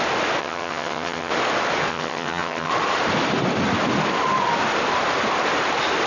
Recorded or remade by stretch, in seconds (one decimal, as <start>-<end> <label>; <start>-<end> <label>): 0.0-0.4 recorded; 0.4-1.3 remade; 1.3-1.9 recorded; 1.9-2.7 remade; 2.7-6.1 recorded